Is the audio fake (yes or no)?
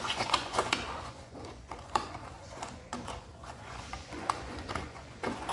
yes